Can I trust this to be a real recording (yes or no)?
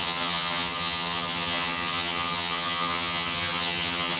no